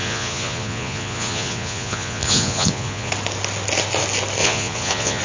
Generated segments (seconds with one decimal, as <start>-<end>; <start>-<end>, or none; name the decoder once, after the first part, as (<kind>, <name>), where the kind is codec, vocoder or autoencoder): 0.0-3.1 (vocoder, Vocos); 4.4-5.2